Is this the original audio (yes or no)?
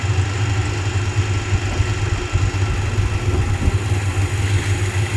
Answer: yes